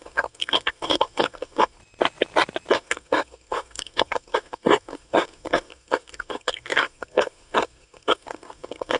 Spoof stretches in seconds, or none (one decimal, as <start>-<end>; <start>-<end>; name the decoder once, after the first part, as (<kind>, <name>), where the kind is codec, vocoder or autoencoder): 0.0-1.8 (codec, SNAC); 2.7-9.0